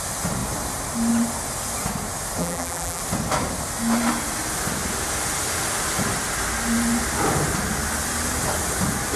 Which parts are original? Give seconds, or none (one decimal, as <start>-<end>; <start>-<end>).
0.0-2.4; 3.0-9.2